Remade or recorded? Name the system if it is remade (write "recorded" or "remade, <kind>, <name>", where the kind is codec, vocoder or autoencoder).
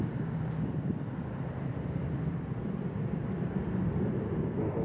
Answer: remade, vocoder, BigVGAN v2